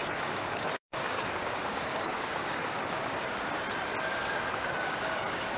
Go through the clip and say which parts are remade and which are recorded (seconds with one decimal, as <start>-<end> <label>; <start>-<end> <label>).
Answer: 0.0-3.4 remade; 3.4-4.1 recorded; 4.1-5.6 remade